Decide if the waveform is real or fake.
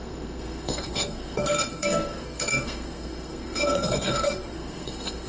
fake